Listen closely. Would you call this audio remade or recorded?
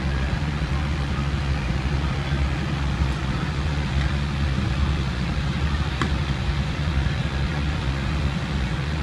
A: remade